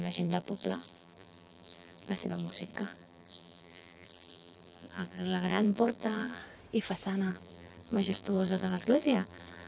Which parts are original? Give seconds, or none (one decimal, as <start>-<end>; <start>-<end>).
6.4-7.3